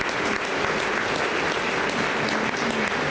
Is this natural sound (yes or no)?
yes